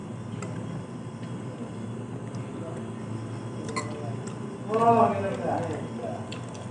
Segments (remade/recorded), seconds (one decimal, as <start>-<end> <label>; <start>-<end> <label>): 0.0-6.7 recorded